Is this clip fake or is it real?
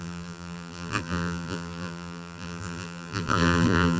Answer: fake